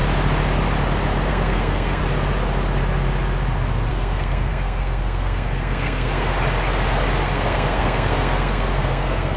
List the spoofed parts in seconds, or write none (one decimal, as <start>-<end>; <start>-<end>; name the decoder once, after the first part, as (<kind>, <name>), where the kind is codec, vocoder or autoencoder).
1.3-2.0 (codec, SNAC); 3.9-6.3; 7.2-9.4